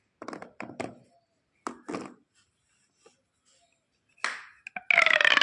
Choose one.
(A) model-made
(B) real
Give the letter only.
B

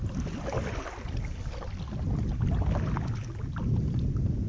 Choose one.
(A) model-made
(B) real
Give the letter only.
B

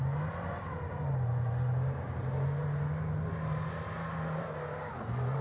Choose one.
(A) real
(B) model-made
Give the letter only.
A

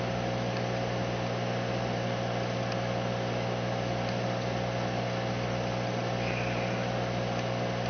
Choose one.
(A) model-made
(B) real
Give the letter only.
B